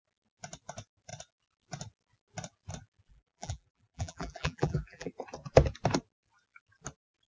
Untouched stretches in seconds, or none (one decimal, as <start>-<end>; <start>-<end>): 0.0-3.1; 5.1-7.3